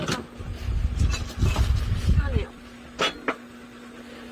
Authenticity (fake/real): real